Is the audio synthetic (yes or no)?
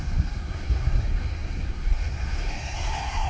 yes